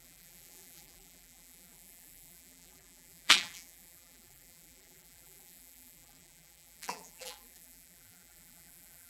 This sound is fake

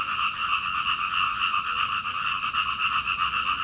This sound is real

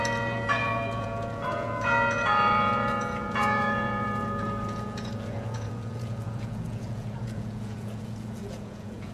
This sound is fake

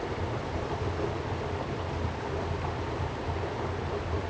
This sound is real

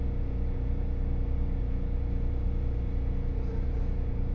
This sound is fake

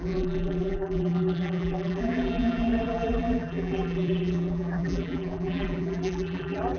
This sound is fake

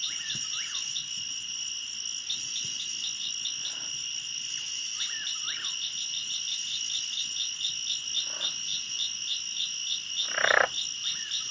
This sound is real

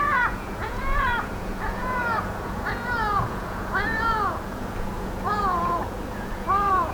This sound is fake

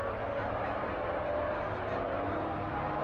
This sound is fake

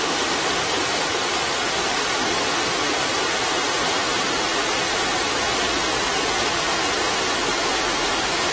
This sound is fake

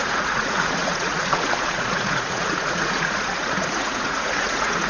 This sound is fake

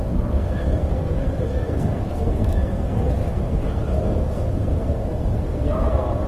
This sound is fake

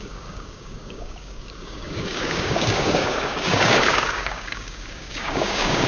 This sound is fake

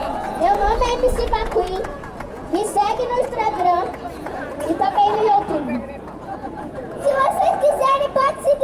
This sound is fake